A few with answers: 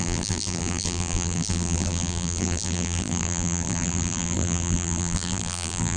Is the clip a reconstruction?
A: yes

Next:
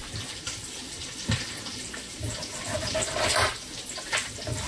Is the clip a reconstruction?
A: no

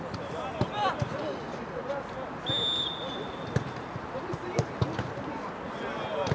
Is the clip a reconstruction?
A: no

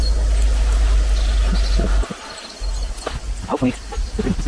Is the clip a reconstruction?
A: no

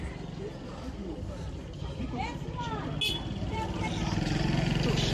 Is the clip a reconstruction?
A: no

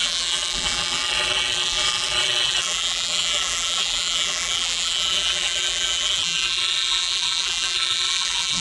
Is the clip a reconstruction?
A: yes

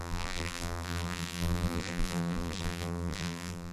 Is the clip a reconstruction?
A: yes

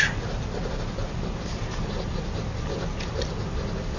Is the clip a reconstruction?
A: no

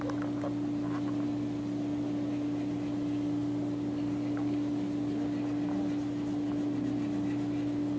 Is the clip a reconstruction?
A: no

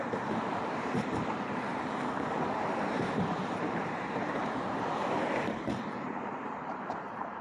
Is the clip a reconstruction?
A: yes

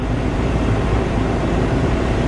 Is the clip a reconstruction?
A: yes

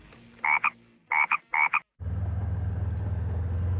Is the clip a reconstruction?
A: no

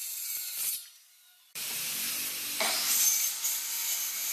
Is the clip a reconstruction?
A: yes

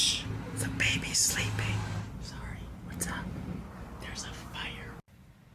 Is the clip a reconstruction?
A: no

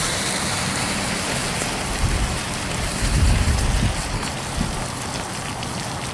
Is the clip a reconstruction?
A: no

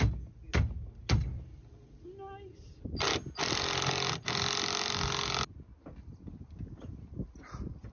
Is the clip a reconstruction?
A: no